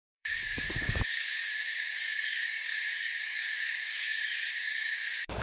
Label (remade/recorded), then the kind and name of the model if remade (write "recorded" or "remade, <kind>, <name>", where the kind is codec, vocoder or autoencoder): remade, codec, DAC